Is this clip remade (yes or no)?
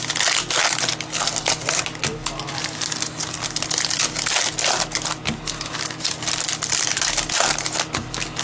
no